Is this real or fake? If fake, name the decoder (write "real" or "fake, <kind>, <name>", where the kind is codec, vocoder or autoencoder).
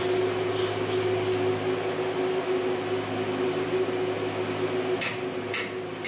real